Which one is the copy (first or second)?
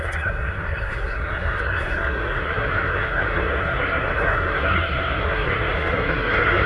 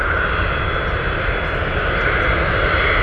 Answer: first